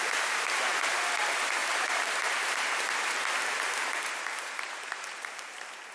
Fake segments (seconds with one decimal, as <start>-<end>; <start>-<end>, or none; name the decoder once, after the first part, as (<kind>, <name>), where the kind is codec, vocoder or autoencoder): 0.0-5.9 (vocoder, BigVGAN v2)